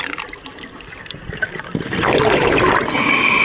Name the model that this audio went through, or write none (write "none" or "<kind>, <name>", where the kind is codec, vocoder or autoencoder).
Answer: none